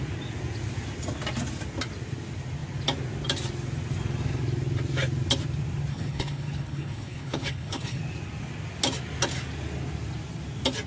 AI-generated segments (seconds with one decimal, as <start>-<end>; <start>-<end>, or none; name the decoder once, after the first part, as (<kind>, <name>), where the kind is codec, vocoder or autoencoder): 5.9-8.0 (codec, HILCodec)

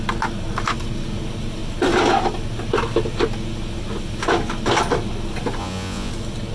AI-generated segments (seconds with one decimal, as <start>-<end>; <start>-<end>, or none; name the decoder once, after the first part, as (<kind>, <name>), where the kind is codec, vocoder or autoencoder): 5.6-6.1 (vocoder, Vocos)